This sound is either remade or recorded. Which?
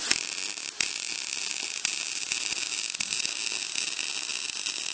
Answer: recorded